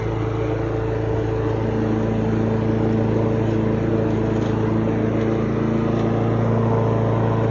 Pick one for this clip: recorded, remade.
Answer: recorded